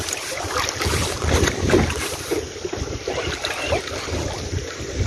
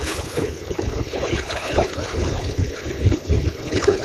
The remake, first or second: second